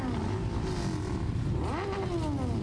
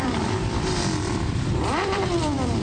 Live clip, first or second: first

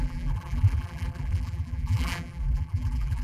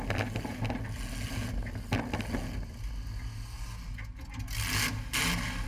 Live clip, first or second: second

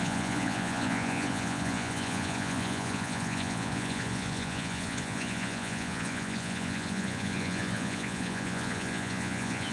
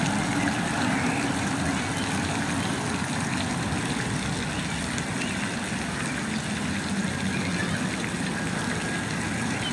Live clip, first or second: second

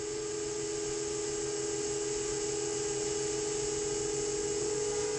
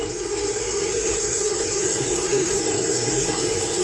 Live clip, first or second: first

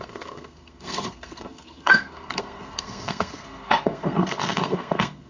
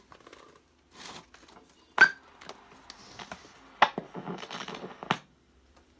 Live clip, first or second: second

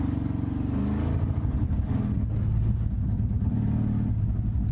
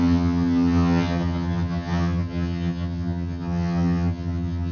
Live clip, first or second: first